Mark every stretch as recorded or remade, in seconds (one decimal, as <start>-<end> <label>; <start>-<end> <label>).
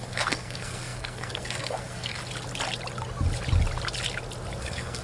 0.0-2.2 remade; 2.2-4.6 recorded; 4.6-5.0 remade